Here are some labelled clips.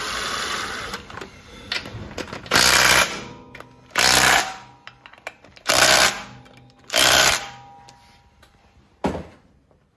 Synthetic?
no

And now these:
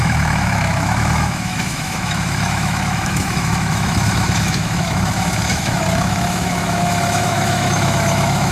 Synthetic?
yes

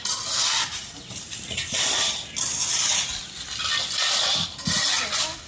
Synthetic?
no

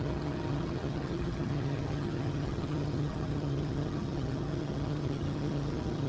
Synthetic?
yes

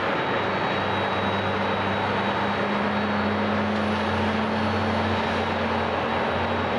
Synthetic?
no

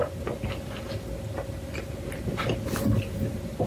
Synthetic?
no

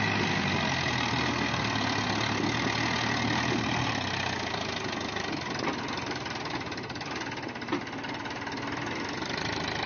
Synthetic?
no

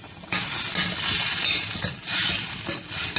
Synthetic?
no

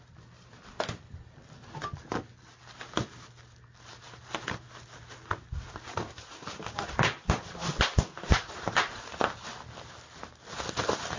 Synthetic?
no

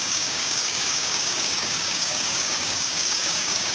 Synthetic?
yes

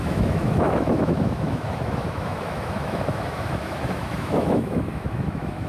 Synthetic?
yes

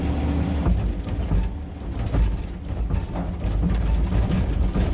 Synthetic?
no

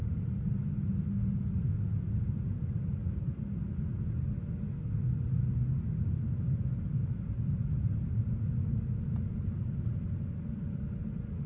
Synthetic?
no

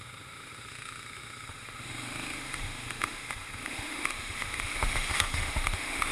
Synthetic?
yes